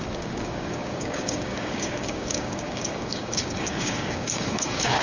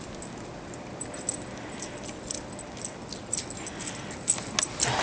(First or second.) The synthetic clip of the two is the first